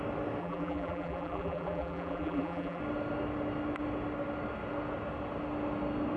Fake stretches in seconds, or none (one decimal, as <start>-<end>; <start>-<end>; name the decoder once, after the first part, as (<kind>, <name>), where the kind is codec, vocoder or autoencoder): 0.4-2.8 (vocoder, BigVGAN v2)